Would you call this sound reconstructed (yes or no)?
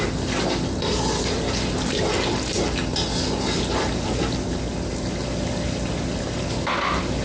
no